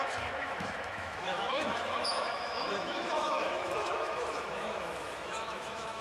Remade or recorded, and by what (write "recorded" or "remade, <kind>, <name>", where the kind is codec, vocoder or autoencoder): remade, autoencoder, DAC-VAE